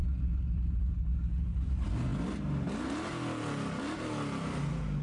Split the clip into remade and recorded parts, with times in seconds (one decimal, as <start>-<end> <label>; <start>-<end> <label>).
0.0-5.0 recorded

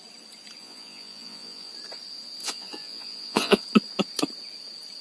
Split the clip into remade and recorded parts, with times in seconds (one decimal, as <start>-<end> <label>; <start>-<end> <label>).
0.0-0.6 recorded; 0.6-1.7 remade; 1.7-2.4 recorded; 2.4-3.6 remade; 3.6-5.0 recorded

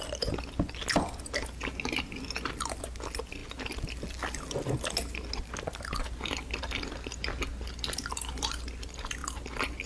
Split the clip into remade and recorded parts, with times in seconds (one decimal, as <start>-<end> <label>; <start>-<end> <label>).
0.0-9.9 recorded

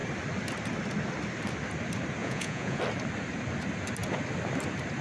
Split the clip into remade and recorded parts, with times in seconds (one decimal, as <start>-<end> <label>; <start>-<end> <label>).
0.0-2.2 recorded; 2.2-2.8 remade; 2.8-5.0 recorded